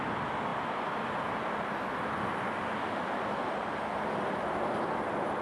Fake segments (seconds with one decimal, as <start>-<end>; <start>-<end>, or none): none